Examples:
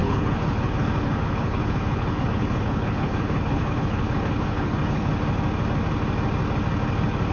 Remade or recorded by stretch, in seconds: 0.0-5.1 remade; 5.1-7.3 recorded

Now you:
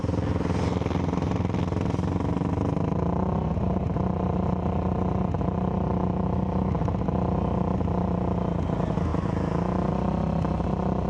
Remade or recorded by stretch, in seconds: 0.0-11.1 recorded

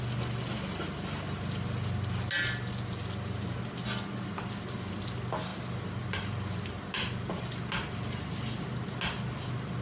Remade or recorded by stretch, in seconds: 0.0-9.8 recorded

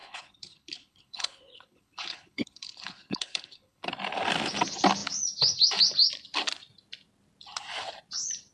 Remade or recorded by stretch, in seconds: 0.0-3.9 remade; 3.9-8.5 recorded

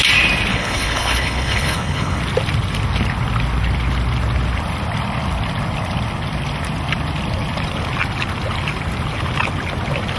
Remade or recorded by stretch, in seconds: 0.0-0.5 recorded; 0.5-2.2 remade; 2.2-10.2 recorded

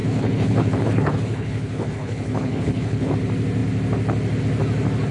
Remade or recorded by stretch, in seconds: 0.0-3.1 remade; 3.1-5.1 recorded

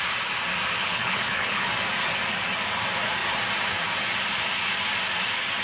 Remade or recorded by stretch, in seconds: 0.0-0.8 recorded; 0.8-1.7 remade; 1.7-5.6 recorded